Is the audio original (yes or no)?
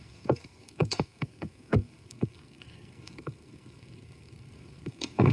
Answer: no